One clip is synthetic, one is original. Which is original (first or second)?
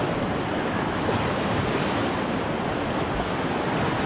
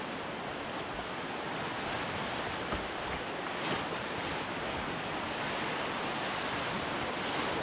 second